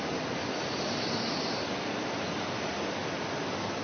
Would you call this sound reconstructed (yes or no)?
no